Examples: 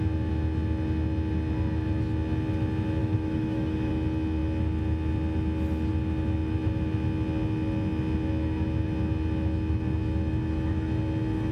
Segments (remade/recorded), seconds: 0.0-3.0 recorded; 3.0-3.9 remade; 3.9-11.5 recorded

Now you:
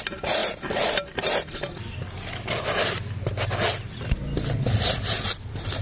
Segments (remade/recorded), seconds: 0.0-5.8 recorded

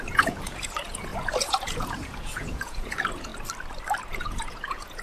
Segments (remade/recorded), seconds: 0.0-3.3 remade; 3.3-4.1 recorded; 4.1-5.0 remade

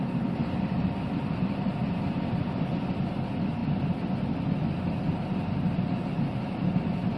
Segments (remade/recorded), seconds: 0.0-0.4 recorded; 0.4-2.9 remade; 2.9-7.2 recorded

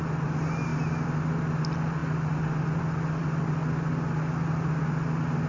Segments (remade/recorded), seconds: 0.0-5.5 recorded

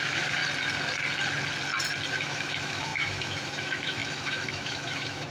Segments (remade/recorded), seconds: 0.0-0.4 remade; 0.4-2.1 recorded; 2.1-5.3 remade

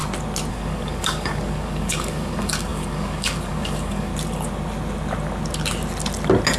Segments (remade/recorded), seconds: 0.0-0.5 recorded; 0.5-4.1 remade; 4.1-6.6 recorded